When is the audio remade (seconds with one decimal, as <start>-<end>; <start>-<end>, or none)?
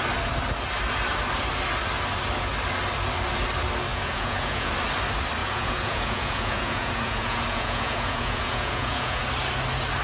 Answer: 3.9-4.7; 5.4-9.2